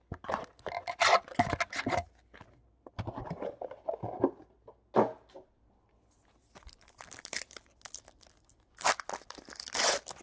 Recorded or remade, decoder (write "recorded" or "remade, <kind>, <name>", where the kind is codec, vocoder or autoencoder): recorded